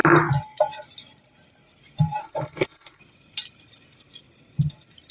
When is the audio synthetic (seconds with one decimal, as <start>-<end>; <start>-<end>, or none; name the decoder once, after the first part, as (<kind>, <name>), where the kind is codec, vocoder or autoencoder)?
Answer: 2.2-3.0 (codec, HILCodec)